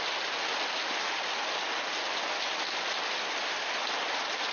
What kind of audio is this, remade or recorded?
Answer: recorded